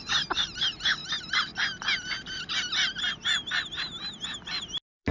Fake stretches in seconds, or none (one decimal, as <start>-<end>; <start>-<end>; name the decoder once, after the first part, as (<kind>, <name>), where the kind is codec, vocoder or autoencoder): none